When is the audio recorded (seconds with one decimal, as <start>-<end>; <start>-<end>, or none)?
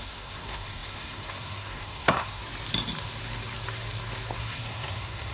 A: 2.4-4.4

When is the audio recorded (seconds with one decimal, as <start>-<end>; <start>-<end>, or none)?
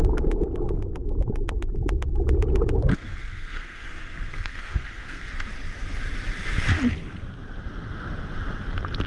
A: 0.0-2.9; 5.3-9.1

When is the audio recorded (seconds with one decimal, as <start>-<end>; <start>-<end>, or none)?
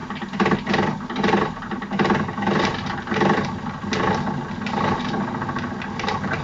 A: 0.0-6.4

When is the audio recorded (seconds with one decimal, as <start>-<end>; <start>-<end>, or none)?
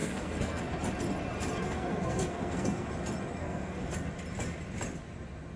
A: 0.6-1.6; 2.9-3.4; 3.9-5.6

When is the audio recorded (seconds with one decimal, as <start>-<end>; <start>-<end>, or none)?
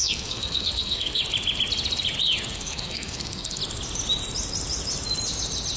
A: 1.2-2.5; 3.6-5.8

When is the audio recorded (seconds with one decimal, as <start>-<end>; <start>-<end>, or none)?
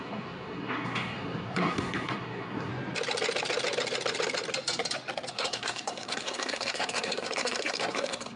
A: 2.7-5.3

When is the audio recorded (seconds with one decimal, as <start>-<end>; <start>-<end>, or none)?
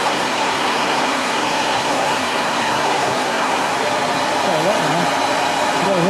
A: 3.7-6.1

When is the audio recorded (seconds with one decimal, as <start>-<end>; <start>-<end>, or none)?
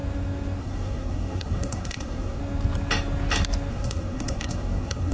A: 0.0-0.6; 2.4-3.7